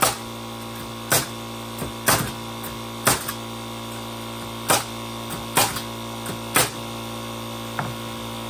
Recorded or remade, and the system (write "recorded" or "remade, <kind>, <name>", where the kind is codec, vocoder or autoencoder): recorded